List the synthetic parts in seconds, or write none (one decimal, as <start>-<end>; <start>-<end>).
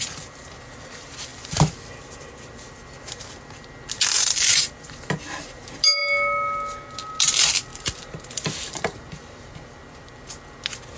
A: 7.7-10.1